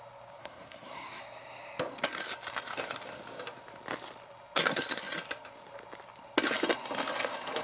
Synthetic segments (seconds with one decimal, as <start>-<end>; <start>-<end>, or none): 0.4-1.2